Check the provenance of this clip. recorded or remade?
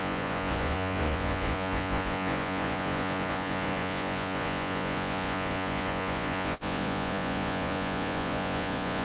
remade